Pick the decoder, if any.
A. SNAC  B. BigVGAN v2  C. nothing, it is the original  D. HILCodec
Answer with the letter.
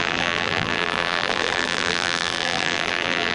B